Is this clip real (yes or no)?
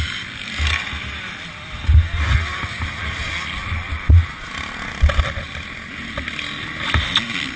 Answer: yes